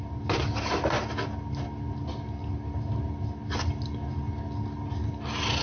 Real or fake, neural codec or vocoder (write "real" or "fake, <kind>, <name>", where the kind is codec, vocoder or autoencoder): real